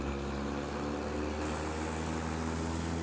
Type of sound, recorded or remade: recorded